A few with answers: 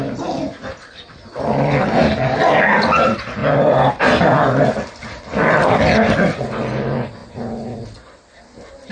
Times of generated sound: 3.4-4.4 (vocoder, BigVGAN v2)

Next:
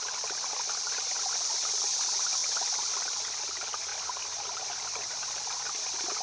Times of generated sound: none

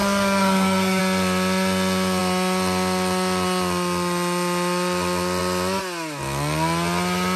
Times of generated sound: 0.0-1.0 (codec, SNAC)